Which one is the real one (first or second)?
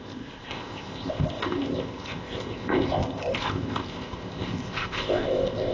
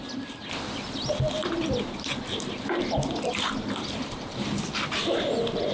second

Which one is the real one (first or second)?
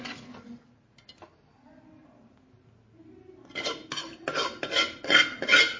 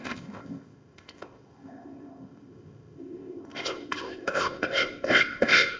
first